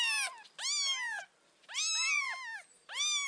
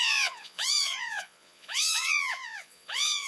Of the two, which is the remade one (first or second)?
second